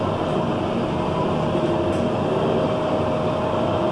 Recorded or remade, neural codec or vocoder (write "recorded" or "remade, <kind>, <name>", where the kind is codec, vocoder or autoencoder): recorded